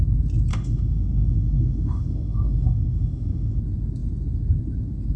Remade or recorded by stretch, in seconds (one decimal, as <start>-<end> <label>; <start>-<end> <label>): 0.0-0.5 recorded; 0.5-3.6 remade; 3.6-5.2 recorded